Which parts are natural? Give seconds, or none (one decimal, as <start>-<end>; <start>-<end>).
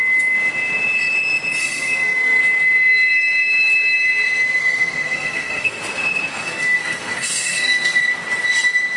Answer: 0.0-1.6; 2.4-4.6; 5.8-6.3; 8.0-9.0